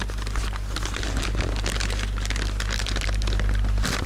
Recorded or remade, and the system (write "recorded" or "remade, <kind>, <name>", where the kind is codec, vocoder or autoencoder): recorded